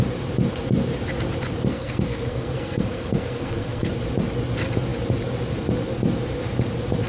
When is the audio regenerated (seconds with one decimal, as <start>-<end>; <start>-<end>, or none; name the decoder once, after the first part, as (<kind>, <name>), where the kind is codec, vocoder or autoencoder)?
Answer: 1.7-3.9 (codec, SNAC)